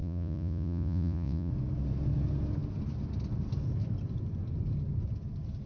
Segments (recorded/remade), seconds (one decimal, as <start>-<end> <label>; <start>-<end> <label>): 0.0-1.5 remade; 1.5-5.7 recorded